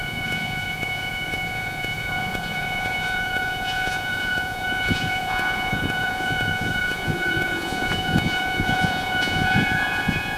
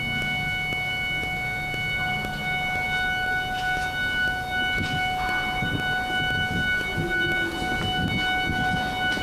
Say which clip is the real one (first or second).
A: second